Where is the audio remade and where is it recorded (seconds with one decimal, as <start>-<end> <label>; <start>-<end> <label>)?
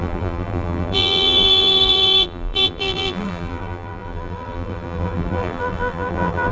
0.0-6.5 remade